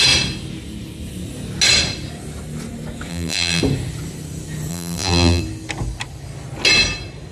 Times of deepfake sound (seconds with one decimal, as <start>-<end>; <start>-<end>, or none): 3.1-3.6; 4.7-5.4